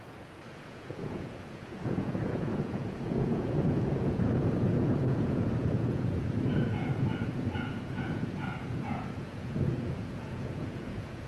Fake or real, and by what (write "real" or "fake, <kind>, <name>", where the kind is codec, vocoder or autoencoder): fake, vocoder, Vocos